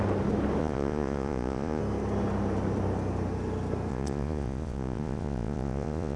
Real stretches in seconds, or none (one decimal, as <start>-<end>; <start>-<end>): 0.0-0.6; 1.8-3.9